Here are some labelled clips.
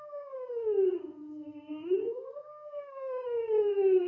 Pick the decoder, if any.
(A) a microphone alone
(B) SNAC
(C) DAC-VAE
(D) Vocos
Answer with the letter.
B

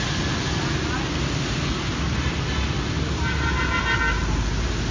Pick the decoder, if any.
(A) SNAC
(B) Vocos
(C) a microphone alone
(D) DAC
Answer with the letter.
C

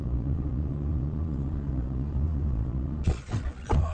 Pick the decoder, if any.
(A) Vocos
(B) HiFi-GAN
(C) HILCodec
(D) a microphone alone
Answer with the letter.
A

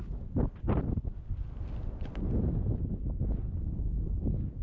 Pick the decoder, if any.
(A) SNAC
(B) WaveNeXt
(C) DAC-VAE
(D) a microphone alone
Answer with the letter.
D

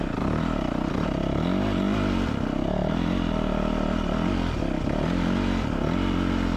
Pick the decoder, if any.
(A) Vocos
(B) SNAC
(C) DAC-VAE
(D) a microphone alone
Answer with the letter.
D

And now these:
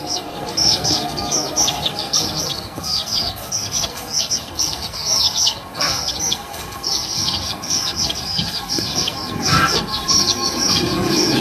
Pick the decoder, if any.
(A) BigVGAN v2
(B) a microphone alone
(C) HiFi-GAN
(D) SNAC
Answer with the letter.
D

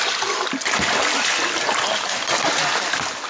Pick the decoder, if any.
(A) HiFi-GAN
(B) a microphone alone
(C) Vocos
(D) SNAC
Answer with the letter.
B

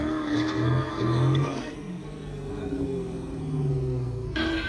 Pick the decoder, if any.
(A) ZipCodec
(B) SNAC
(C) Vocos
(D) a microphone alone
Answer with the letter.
B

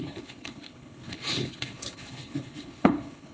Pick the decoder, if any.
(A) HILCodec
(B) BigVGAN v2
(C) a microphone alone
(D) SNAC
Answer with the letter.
A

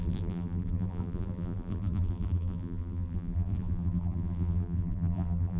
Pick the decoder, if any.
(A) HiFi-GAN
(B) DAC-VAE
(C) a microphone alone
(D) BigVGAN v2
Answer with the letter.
D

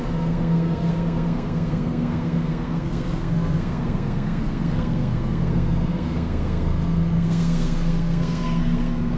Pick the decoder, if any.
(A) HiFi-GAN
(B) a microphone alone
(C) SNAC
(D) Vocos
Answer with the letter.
C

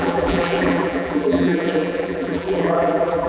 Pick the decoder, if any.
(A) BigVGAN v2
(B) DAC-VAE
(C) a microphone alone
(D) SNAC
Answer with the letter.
A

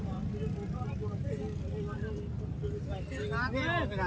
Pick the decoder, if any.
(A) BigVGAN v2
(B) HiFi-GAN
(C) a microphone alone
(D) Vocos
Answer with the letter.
C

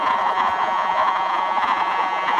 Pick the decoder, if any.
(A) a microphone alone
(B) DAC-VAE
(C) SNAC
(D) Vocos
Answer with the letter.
D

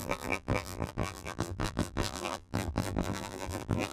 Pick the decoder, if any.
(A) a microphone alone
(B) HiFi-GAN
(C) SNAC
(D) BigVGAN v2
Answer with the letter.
D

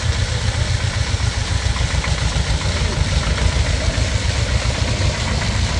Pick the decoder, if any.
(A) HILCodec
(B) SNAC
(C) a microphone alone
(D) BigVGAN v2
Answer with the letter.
C